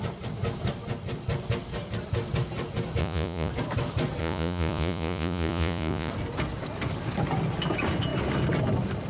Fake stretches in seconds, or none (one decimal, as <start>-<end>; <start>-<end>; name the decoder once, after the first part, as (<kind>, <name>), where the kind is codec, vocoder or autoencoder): 3.0-3.5 (vocoder, Vocos); 4.2-6.1